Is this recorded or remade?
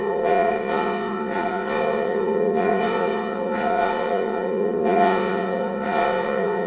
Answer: remade